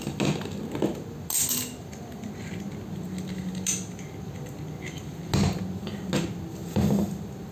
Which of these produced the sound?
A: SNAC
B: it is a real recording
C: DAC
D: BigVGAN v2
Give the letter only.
B